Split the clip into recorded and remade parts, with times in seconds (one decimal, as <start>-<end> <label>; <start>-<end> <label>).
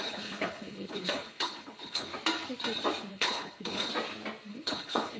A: 0.0-2.1 remade; 2.1-3.1 recorded; 3.1-3.9 remade; 3.9-4.5 recorded; 4.5-5.2 remade